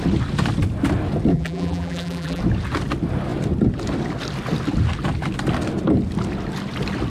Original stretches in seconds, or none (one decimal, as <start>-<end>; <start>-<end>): 0.0-1.3; 2.4-7.1